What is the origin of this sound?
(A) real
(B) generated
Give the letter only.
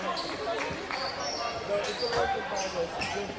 A